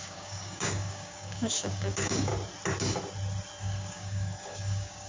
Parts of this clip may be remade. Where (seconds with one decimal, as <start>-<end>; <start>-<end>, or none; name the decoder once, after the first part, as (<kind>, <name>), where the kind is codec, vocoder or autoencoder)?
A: 0.0-2.3 (codec, DAC); 3.6-5.1